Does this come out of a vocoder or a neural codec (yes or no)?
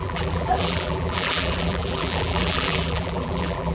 yes